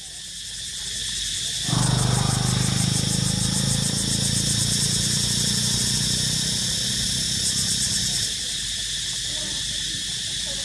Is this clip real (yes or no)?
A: yes